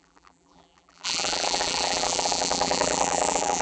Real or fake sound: fake